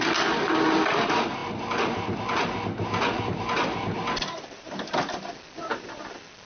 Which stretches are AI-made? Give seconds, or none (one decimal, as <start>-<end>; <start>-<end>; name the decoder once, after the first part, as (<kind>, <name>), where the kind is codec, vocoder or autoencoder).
none